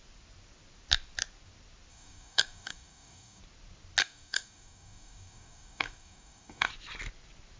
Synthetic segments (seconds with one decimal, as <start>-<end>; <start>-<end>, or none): 1.9-3.4; 4.0-6.7